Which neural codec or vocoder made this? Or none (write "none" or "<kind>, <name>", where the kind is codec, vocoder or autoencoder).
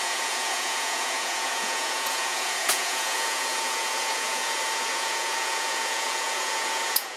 vocoder, Vocos